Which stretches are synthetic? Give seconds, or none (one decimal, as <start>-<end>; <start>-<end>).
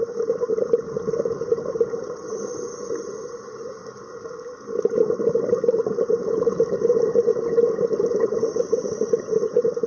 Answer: 0.0-3.8; 4.8-7.3; 8.1-9.9